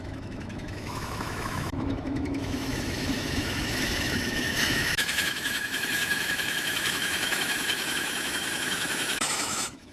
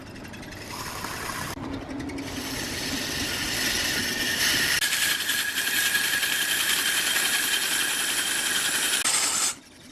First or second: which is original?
second